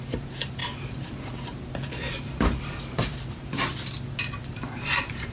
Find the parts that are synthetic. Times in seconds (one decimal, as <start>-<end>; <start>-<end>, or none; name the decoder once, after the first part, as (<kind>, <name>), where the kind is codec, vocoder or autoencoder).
0.0-0.6 (vocoder, BigVGAN v2); 1.3-3.7; 4.5-5.3